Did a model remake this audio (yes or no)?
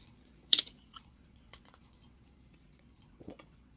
yes